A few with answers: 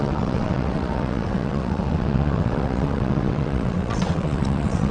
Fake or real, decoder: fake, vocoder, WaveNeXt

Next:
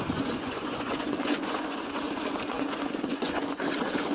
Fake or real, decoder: fake, vocoder, Vocos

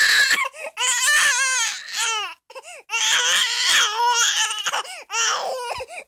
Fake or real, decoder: real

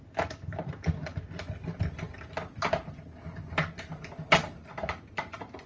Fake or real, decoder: real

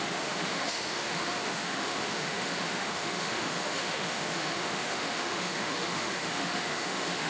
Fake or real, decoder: fake, autoencoder, DAC-VAE